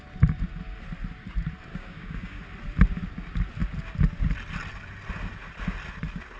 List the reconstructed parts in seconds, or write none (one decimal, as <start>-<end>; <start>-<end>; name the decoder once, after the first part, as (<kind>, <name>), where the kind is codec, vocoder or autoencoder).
1.7-2.4 (codec, DAC)